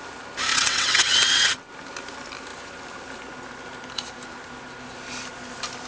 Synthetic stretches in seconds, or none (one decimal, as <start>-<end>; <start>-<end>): 0.5-1.7